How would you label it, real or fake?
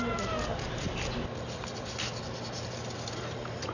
real